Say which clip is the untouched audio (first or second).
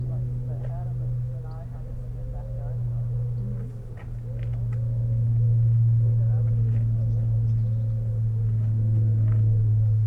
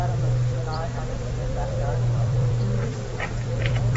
first